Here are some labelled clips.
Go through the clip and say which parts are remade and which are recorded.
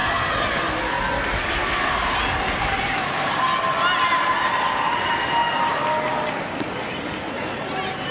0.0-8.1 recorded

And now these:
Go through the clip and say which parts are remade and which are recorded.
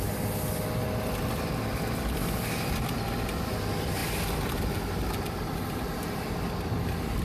0.0-7.2 recorded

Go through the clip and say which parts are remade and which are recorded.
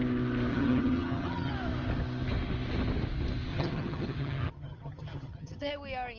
0.0-0.5 recorded; 0.5-1.5 remade; 1.5-3.5 recorded; 3.5-5.7 remade; 5.7-6.2 recorded